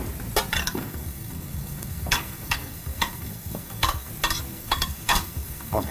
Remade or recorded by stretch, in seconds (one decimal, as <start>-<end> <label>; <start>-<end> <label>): 0.0-0.6 recorded; 0.6-4.1 remade; 4.1-4.5 recorded; 4.5-5.9 remade